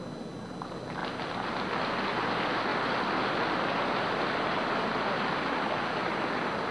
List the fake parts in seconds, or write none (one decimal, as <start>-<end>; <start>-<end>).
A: none

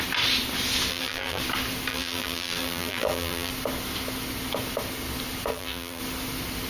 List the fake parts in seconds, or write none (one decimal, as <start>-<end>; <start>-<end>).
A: 0.9-1.4; 1.9-3.5; 5.5-6.0